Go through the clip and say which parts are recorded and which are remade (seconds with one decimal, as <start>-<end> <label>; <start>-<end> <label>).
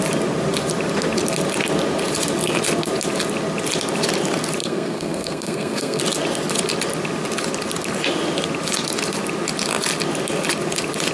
0.0-4.6 recorded; 4.6-6.0 remade; 6.0-11.1 recorded